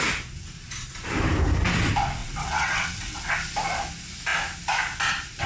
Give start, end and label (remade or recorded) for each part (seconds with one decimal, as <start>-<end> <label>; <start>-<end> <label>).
0.0-2.2 recorded; 2.2-3.3 remade; 3.3-5.5 recorded

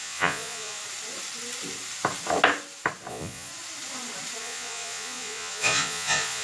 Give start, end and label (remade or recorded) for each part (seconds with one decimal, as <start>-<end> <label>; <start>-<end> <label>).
0.0-0.8 remade; 0.8-3.1 recorded; 3.1-3.5 remade; 3.5-4.4 recorded; 4.4-6.4 remade